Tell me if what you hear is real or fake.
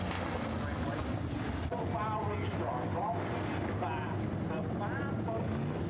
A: real